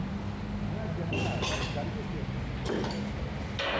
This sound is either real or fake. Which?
real